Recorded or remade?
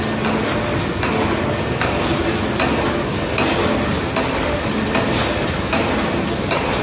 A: recorded